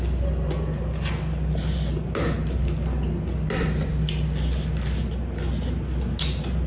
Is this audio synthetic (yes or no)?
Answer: no